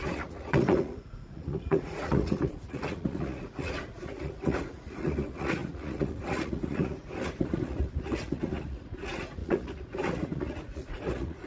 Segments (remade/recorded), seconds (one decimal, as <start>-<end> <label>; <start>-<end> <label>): 0.0-11.5 remade